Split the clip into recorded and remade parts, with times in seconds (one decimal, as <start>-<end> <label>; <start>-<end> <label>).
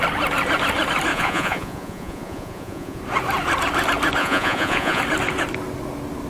0.0-1.1 recorded; 1.1-3.0 remade; 3.0-4.2 recorded; 4.2-5.0 remade; 5.0-6.3 recorded